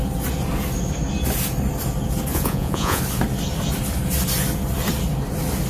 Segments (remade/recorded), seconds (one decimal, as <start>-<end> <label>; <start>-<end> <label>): 0.0-2.3 recorded; 2.3-3.0 remade; 3.0-5.7 recorded